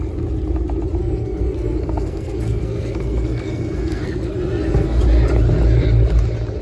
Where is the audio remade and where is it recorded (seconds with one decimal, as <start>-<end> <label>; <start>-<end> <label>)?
0.0-1.0 recorded; 1.0-5.0 remade; 5.0-6.6 recorded

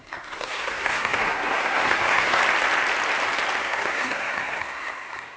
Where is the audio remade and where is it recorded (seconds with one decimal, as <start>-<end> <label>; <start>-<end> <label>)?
0.0-2.4 remade; 2.4-3.6 recorded; 3.6-5.4 remade

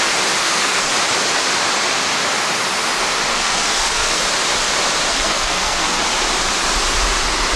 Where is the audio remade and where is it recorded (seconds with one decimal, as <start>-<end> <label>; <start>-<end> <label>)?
0.0-0.4 recorded; 0.4-0.9 remade; 0.9-3.3 recorded; 3.3-4.2 remade; 4.2-5.1 recorded; 5.1-6.0 remade; 6.0-7.6 recorded

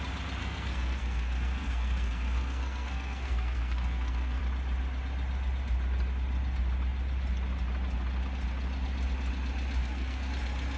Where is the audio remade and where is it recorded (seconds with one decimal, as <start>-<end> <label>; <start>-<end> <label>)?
0.0-0.4 recorded; 0.4-4.4 remade; 4.4-9.8 recorded; 9.8-10.3 remade; 10.3-10.8 recorded

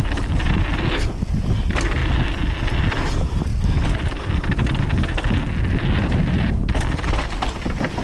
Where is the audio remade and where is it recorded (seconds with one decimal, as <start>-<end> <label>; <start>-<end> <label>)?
0.0-8.0 recorded